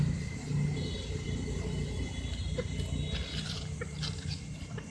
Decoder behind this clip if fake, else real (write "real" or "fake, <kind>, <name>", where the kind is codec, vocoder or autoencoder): real